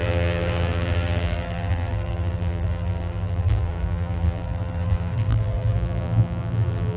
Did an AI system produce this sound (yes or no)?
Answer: yes